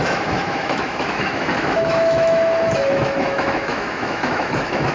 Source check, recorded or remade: remade